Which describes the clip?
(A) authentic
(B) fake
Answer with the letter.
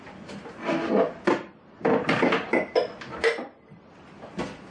A